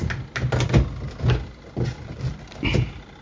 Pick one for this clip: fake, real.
real